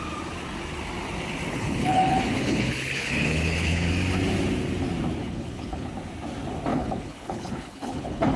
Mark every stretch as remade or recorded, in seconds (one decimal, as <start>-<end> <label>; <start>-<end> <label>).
0.0-1.5 recorded; 1.5-3.9 remade; 3.9-5.2 recorded; 5.2-5.9 remade; 5.9-6.7 recorded; 6.7-8.4 remade